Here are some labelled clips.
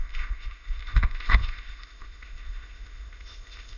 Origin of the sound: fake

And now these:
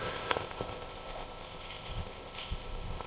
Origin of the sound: fake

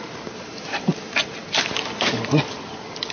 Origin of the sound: real